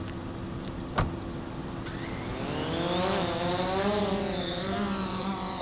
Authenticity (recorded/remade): recorded